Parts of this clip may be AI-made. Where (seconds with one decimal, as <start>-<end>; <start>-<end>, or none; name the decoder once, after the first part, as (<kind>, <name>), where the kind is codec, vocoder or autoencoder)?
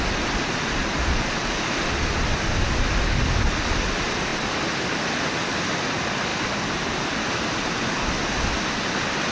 4.3-4.9 (vocoder, BigVGAN v2); 6.3-8.1